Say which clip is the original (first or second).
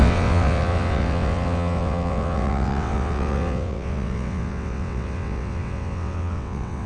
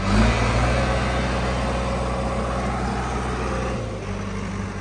second